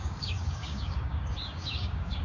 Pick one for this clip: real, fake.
fake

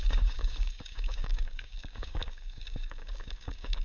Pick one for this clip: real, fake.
fake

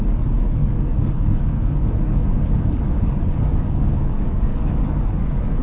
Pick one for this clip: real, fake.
fake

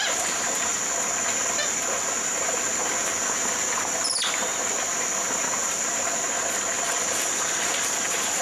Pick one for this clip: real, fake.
real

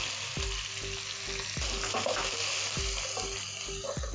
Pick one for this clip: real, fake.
real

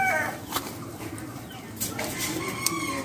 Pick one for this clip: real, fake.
real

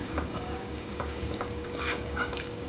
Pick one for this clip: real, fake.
fake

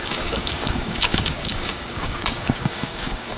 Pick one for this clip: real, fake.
fake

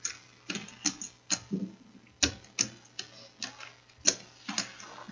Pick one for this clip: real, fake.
real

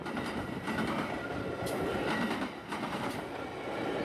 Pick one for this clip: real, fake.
real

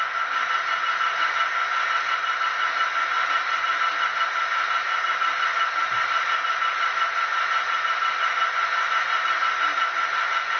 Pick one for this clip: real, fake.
real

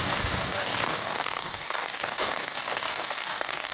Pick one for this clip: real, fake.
fake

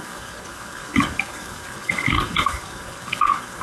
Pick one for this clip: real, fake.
fake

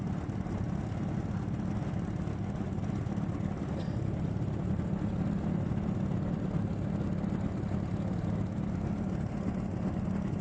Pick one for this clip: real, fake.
real